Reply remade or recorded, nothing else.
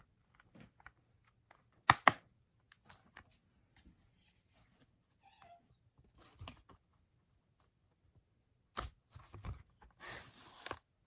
recorded